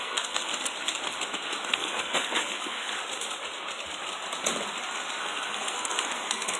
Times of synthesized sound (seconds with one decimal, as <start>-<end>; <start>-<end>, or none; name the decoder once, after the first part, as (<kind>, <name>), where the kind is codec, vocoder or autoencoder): 0.0-0.5 (codec, SNAC); 1.7-2.9; 5.2-6.6